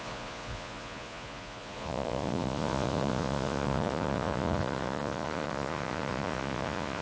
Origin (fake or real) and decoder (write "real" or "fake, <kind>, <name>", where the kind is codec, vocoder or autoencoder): fake, vocoder, Vocos